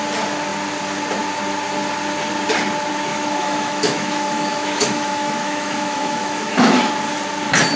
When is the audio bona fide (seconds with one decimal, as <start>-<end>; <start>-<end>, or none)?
0.0-3.1; 6.9-7.8